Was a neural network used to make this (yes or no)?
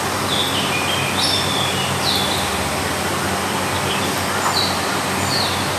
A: no